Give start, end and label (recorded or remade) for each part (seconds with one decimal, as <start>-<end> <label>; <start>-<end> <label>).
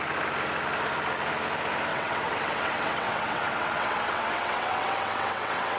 0.0-1.9 recorded; 1.9-5.8 remade